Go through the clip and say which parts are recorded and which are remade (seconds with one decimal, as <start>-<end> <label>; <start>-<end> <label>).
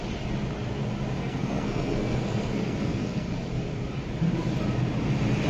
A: 0.0-1.2 recorded; 1.2-3.5 remade; 3.5-5.5 recorded